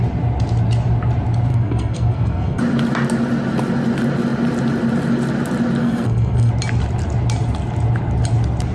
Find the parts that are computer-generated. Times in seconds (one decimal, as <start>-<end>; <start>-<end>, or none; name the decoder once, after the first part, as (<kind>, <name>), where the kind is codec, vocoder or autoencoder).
1.5-2.6 (codec, SNAC); 5.8-6.5